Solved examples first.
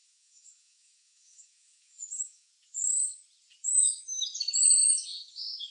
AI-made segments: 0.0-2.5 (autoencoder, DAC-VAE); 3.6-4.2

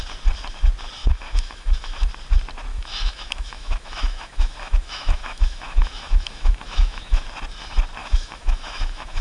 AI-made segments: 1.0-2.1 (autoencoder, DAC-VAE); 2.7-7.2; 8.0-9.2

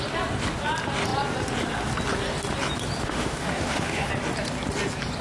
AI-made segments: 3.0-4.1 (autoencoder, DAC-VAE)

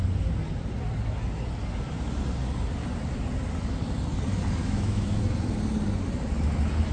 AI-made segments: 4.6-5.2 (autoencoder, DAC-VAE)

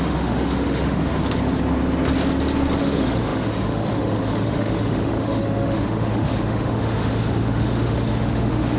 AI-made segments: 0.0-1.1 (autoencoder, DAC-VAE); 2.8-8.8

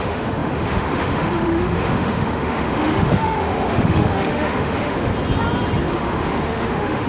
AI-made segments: 0.0-5.1 (autoencoder, DAC-VAE); 5.9-7.1

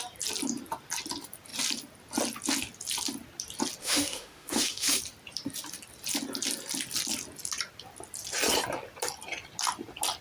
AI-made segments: 3.8-5.0 (autoencoder, DAC-VAE)